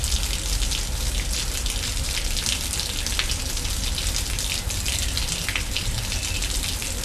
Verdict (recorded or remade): recorded